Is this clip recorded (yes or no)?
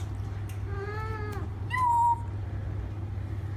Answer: yes